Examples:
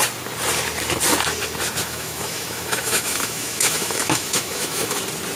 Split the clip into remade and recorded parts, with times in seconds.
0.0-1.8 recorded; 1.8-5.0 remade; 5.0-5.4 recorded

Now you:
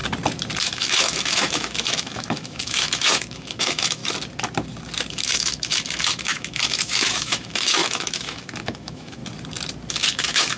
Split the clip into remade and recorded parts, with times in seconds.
0.0-0.6 recorded; 0.6-4.0 remade; 4.0-5.1 recorded; 5.1-9.2 remade; 9.2-9.9 recorded; 9.9-10.6 remade